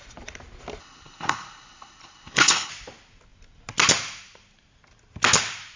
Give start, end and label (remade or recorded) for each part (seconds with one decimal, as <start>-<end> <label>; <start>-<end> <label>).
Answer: 0.0-0.8 recorded; 0.8-2.7 remade; 2.7-5.8 recorded